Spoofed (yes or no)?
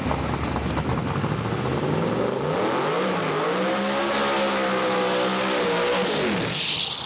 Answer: no